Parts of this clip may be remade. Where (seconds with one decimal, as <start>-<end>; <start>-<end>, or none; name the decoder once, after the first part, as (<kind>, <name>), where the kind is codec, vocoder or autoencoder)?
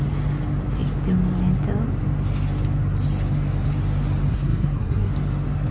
4.3-5.1 (codec, SNAC)